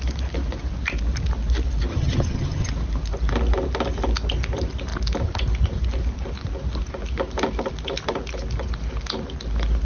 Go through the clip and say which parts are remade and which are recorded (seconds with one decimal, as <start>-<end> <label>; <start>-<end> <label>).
0.0-1.9 recorded; 1.9-2.7 remade; 2.7-9.8 recorded